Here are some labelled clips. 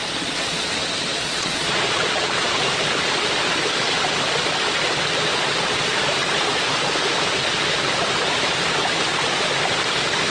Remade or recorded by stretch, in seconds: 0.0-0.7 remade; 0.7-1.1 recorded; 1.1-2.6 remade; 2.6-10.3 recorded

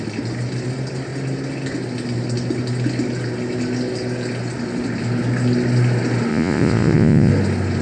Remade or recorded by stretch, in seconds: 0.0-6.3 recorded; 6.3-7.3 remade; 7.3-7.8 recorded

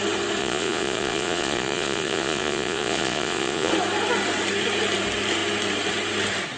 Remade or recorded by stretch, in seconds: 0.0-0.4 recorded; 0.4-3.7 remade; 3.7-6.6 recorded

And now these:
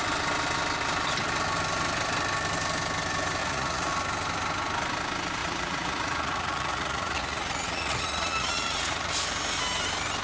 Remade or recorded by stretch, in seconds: 0.0-3.4 recorded; 3.4-3.9 remade; 3.9-5.4 recorded; 5.4-9.1 remade; 9.1-10.2 recorded

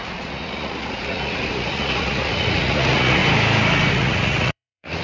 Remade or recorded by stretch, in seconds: 0.0-3.2 remade; 3.2-3.9 recorded; 3.9-5.0 remade

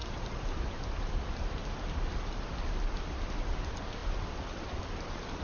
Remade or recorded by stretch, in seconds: 0.0-5.4 recorded